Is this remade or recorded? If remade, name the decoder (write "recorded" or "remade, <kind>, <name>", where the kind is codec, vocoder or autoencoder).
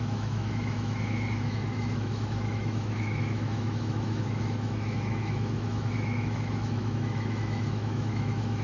remade, autoencoder, DAC-VAE